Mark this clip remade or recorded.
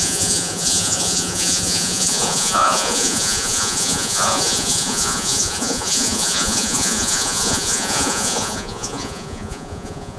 remade